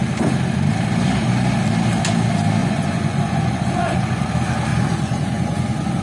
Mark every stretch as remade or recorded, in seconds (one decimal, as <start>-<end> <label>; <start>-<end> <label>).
0.0-2.6 recorded; 2.6-4.3 remade; 4.3-4.7 recorded; 4.7-6.0 remade